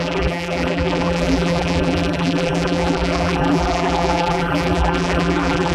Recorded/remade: remade